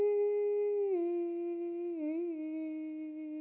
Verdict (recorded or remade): recorded